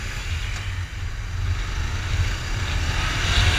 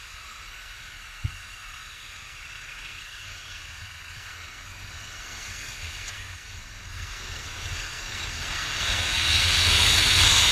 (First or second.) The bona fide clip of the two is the first